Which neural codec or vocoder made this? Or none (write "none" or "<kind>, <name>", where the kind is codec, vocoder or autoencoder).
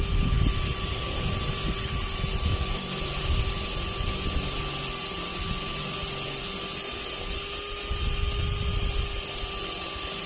none